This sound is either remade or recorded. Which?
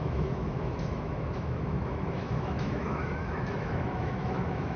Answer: remade